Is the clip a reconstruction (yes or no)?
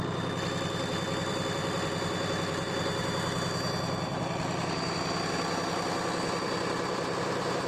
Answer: yes